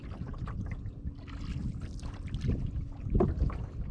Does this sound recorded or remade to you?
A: recorded